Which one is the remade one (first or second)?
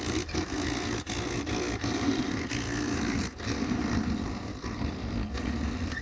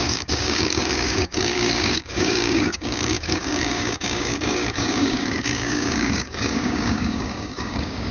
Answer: second